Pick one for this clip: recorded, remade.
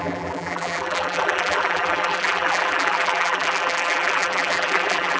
remade